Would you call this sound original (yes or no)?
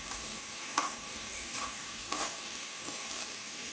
no